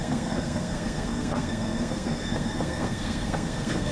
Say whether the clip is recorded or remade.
remade